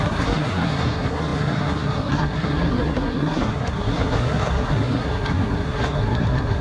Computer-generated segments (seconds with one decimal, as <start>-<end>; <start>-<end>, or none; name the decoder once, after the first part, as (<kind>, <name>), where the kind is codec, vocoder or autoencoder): 0.0-6.6 (codec, SNAC)